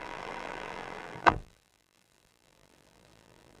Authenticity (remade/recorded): remade